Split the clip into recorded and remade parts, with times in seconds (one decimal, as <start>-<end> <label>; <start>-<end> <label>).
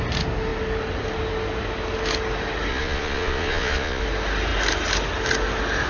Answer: 0.0-2.7 recorded; 2.7-4.0 remade; 4.0-5.9 recorded